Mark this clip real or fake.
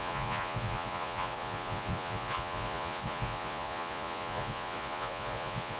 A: fake